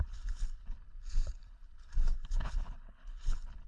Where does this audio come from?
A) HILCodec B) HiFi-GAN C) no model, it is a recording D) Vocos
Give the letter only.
A